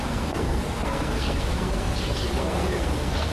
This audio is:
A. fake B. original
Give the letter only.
A